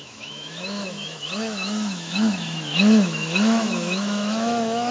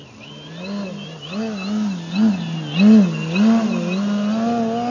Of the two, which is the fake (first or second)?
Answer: first